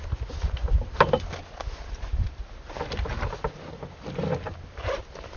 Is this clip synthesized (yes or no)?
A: yes